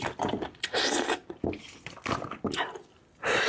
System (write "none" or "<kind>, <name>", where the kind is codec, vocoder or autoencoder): none